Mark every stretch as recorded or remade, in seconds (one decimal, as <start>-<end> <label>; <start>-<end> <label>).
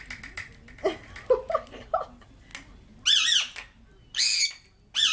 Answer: 0.0-5.1 recorded